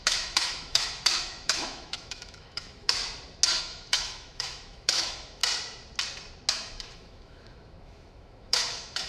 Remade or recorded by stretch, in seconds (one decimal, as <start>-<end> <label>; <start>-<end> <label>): 0.0-3.0 remade; 3.0-3.6 recorded; 3.6-5.4 remade; 5.4-6.5 recorded; 6.5-9.1 remade